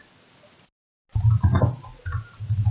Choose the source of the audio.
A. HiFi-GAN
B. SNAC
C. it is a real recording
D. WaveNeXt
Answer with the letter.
C